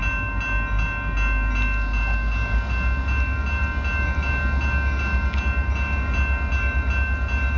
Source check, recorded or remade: recorded